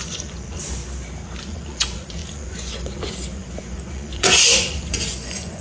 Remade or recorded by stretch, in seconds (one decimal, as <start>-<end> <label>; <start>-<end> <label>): 0.0-0.8 remade; 0.8-1.4 recorded; 1.4-5.6 remade